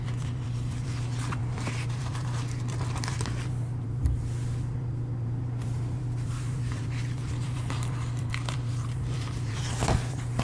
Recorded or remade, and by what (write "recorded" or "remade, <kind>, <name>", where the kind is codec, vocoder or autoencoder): remade, vocoder, BigVGAN v2